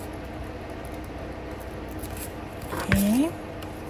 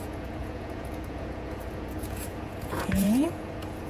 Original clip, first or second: first